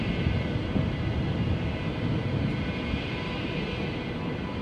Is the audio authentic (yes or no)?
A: yes